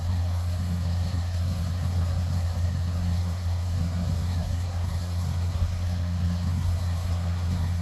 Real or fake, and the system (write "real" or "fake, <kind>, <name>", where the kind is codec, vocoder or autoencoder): fake, codec, SNAC